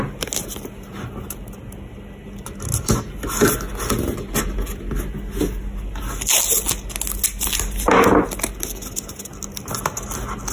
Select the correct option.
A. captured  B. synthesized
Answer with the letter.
A